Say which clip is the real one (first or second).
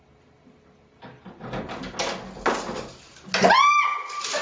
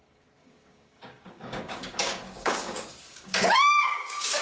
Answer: first